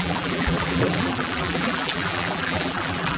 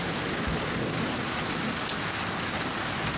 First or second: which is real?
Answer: second